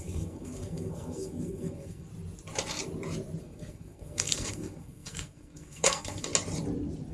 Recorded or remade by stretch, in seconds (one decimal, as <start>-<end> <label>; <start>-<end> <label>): 0.0-2.1 remade; 2.1-3.4 recorded; 3.4-6.3 remade; 6.3-7.1 recorded